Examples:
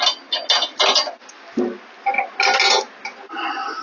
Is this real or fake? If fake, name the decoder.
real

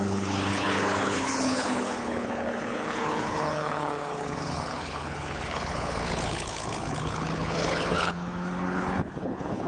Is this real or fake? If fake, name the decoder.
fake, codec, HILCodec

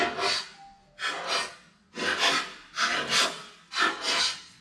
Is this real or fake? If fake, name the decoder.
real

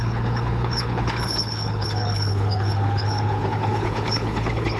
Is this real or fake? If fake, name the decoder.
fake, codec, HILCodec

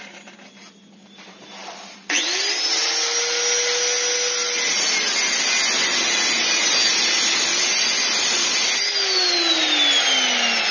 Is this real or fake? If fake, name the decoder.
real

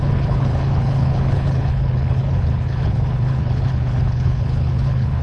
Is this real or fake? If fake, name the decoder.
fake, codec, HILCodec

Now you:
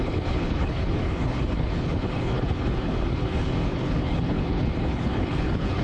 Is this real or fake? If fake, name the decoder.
fake, codec, HILCodec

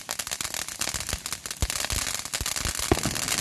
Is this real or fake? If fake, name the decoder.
real